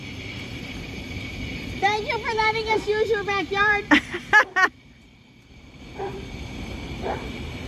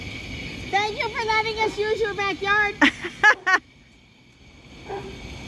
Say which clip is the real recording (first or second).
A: second